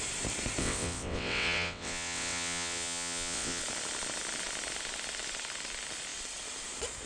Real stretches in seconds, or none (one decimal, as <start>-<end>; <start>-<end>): 0.0-0.6; 3.6-7.1